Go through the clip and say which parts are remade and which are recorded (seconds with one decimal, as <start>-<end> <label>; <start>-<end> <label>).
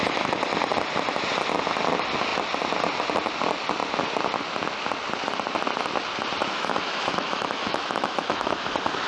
0.0-6.4 recorded; 6.4-8.7 remade; 8.7-9.1 recorded